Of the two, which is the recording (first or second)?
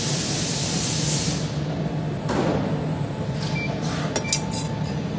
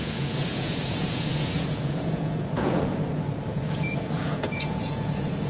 first